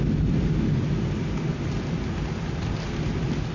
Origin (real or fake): real